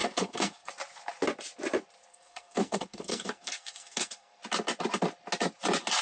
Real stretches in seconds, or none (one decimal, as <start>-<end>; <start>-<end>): 0.7-2.1; 4.4-6.0